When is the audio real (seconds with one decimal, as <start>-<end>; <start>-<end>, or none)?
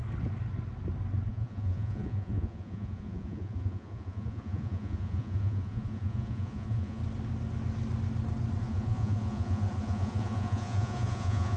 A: 0.0-1.3; 7.0-8.6